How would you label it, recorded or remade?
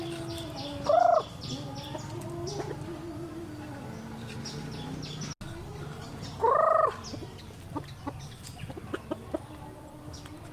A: recorded